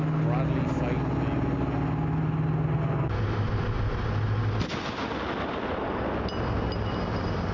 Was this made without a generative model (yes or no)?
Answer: yes